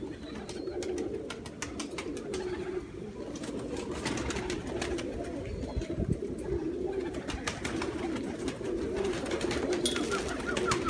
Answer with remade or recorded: recorded